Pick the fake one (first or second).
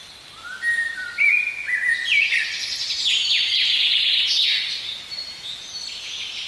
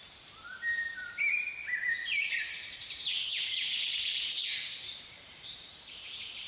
second